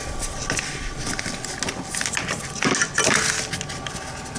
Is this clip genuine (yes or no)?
yes